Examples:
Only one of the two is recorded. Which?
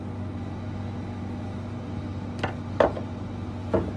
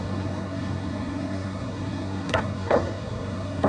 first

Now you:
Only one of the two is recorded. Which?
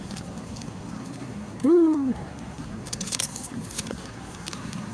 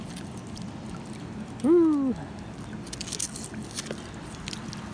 second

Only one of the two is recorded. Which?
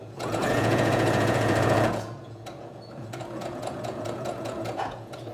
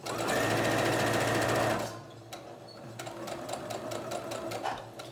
second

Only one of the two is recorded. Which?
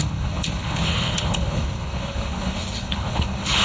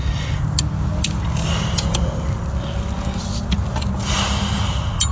second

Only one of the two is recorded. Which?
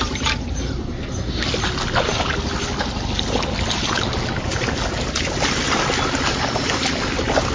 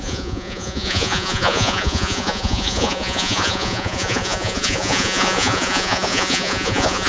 first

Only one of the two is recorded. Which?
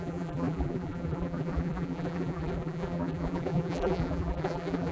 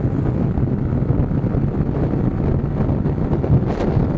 second